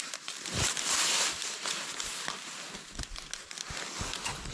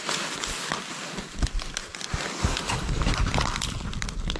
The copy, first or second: second